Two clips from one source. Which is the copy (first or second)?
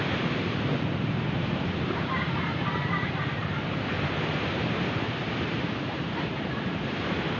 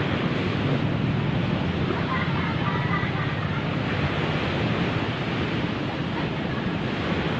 first